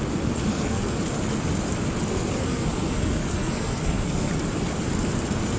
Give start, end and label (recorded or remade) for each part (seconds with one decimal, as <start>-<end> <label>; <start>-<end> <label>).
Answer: 0.0-0.5 recorded; 0.5-1.0 remade; 1.0-2.1 recorded; 2.1-4.3 remade; 4.3-5.6 recorded